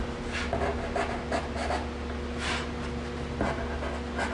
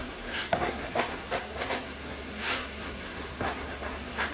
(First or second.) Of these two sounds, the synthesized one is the second